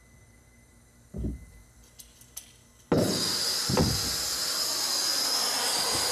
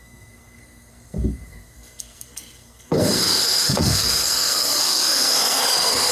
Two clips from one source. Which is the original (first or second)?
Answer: first